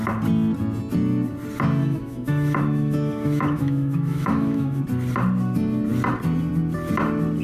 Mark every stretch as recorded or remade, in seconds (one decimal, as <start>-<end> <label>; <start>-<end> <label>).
0.0-1.8 recorded; 1.8-4.8 remade; 4.8-7.4 recorded